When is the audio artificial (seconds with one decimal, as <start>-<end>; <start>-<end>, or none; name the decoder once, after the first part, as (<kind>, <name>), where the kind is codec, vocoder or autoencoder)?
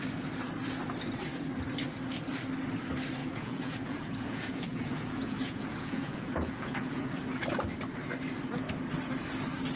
3.2-7.1 (vocoder, Vocos)